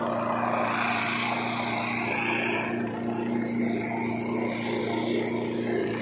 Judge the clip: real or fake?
real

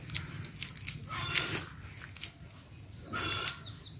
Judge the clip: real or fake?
real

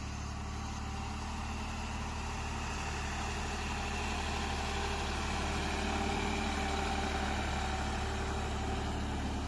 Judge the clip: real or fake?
real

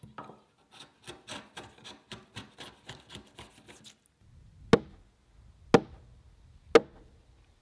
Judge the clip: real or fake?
real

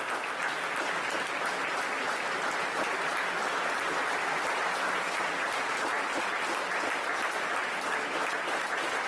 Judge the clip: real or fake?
real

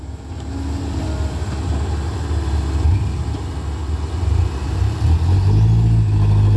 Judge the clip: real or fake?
real